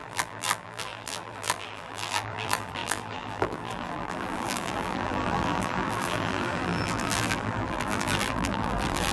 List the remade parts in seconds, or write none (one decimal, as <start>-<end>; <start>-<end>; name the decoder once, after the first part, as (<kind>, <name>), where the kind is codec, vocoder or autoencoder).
0.0-9.1 (vocoder, BigVGAN v2)